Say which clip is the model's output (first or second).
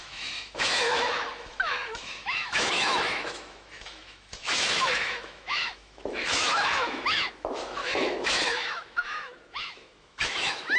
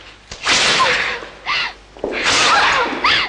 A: first